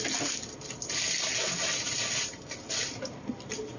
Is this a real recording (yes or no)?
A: yes